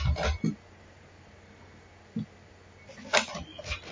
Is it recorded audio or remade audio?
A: recorded